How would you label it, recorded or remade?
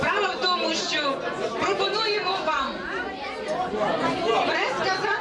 recorded